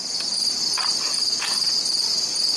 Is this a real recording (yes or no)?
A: yes